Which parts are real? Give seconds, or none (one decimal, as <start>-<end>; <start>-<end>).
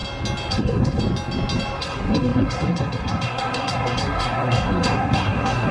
0.0-0.5; 1.0-1.8